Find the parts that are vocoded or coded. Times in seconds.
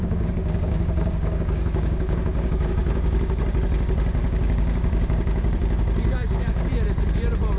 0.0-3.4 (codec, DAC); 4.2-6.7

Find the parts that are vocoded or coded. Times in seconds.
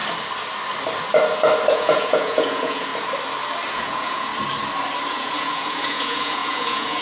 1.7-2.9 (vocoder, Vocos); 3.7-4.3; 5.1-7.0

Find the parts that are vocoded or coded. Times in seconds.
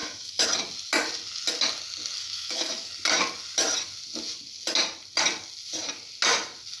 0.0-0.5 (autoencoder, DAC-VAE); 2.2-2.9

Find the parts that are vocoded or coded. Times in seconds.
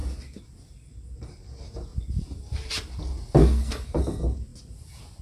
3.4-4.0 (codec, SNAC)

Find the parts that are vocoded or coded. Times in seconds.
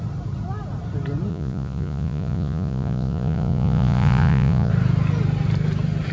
1.3-4.7 (vocoder, Vocos)